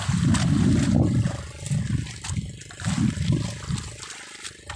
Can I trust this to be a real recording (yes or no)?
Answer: yes